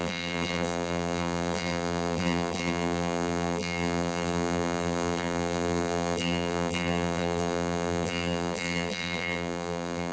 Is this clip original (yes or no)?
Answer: no